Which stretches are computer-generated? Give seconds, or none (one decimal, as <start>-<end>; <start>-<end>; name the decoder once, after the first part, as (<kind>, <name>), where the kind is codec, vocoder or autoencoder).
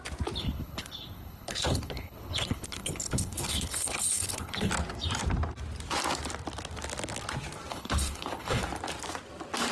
0.4-4.7 (codec, HILCodec); 7.7-8.6